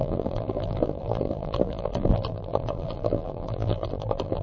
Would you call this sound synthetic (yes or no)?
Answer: yes